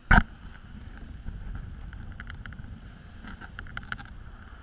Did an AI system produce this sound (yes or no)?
no